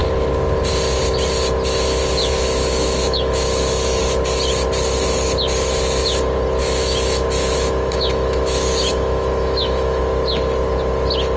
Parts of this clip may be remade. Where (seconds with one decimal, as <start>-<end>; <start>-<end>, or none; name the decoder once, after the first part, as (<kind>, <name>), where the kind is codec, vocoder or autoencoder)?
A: 2.2-4.0 (autoencoder, DAC-VAE); 6.6-10.0